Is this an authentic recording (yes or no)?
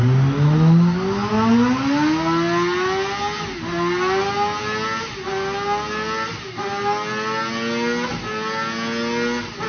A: yes